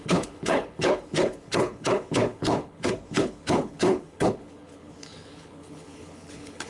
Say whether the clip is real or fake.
fake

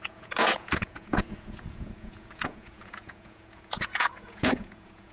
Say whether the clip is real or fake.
fake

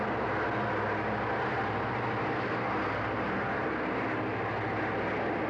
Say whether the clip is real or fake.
real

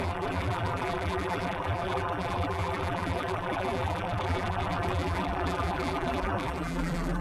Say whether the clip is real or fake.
fake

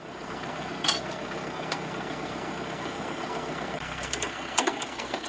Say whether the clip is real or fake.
fake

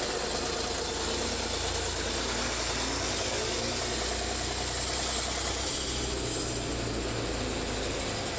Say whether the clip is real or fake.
real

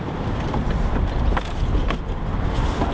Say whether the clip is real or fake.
real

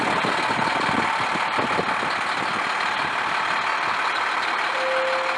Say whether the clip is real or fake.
real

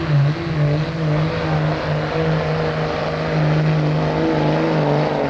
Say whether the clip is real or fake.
real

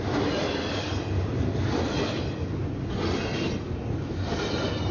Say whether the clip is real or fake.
real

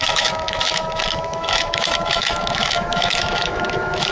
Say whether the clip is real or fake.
fake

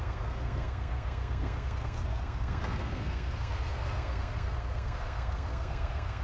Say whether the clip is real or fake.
fake